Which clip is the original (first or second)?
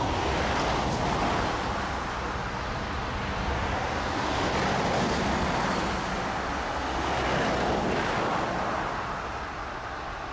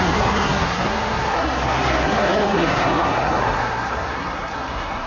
first